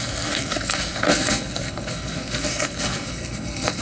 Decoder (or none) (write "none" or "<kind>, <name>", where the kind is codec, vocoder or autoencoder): codec, SNAC